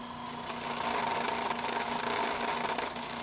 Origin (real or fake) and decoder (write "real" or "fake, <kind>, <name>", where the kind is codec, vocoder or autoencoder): real